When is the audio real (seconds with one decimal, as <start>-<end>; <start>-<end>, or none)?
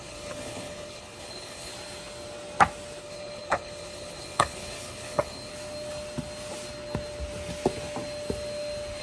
1.7-3.0; 5.5-9.0